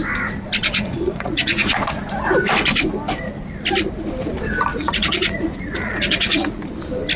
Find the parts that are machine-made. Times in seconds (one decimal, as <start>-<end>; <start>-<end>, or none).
0.6-1.7; 4.7-6.6

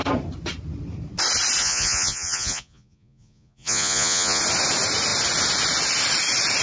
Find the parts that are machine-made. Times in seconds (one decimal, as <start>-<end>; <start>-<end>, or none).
1.6-4.4

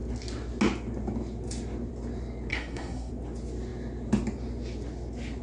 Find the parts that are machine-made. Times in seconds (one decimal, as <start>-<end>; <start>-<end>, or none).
2.5-3.1

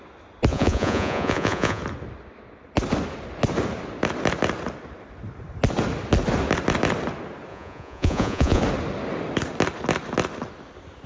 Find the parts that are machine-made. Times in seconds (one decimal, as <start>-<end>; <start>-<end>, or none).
0.5-1.8; 7.5-8.6

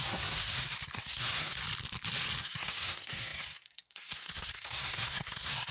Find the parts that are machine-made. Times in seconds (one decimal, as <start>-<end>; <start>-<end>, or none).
0.0-1.6; 2.4-5.7